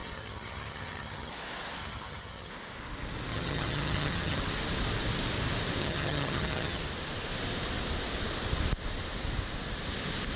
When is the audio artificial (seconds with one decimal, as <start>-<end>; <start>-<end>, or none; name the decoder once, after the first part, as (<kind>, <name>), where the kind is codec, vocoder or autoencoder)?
0.0-1.3 (vocoder, HiFi-GAN); 1.8-2.5; 3.3-4.4; 5.8-6.8